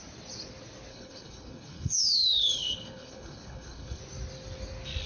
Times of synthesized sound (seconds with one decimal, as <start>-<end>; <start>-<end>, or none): 0.9-4.0